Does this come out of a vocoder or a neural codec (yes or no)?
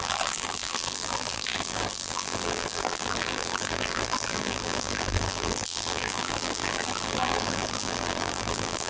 yes